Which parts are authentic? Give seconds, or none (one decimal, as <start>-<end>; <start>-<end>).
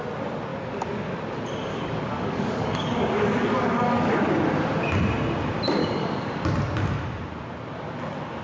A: 0.0-1.7; 4.2-5.8; 6.3-8.4